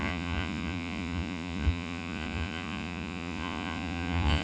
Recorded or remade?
remade